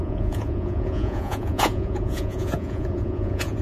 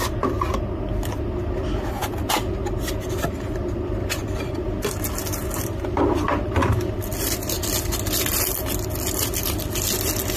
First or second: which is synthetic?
first